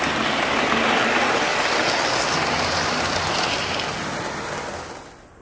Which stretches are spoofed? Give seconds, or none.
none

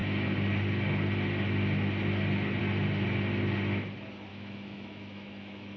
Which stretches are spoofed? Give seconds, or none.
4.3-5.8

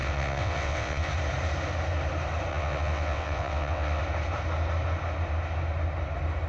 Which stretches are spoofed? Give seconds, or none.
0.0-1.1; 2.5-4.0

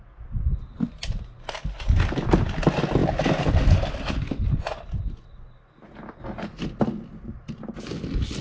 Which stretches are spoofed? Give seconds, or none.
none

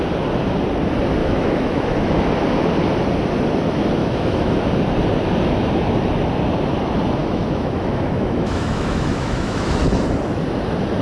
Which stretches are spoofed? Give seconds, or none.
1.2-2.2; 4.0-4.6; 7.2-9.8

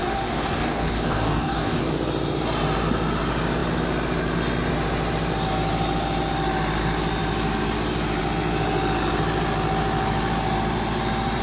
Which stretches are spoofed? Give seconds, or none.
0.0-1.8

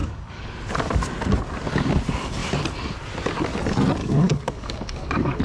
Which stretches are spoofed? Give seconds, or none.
0.0-0.5; 4.0-5.4

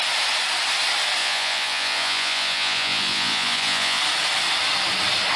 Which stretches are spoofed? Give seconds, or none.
1.2-4.0